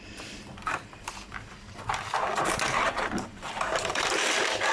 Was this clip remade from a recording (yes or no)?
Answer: yes